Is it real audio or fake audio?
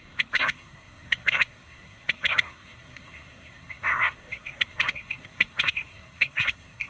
fake